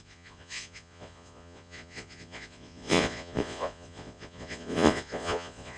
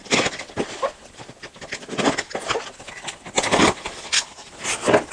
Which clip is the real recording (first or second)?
second